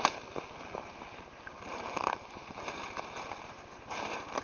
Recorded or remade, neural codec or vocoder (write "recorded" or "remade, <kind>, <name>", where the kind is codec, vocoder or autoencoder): recorded